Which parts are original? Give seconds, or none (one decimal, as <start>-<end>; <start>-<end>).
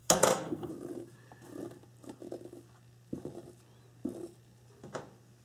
0.7-5.4